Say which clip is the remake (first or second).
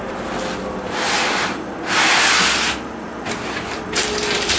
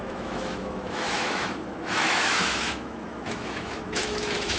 second